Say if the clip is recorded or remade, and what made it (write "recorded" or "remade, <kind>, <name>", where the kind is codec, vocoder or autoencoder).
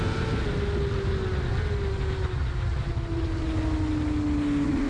recorded